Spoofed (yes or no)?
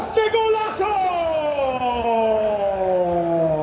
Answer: yes